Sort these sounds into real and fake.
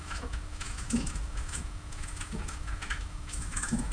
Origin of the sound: fake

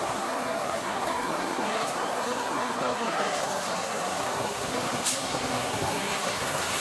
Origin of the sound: fake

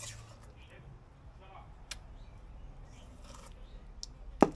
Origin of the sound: real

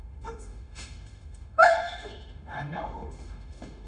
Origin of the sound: fake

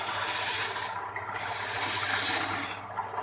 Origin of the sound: real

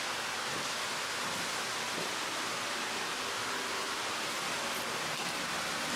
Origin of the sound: real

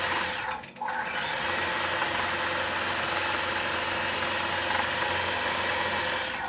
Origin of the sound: real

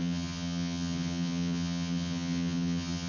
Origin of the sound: fake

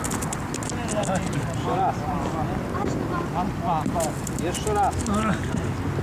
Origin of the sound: real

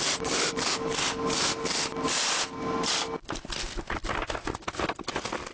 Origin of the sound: real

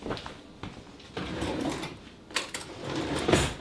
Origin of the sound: real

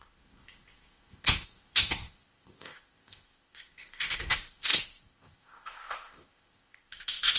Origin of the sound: fake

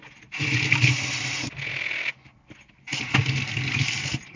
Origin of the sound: real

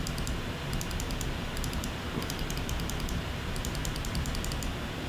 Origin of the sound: real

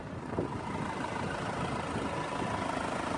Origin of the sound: real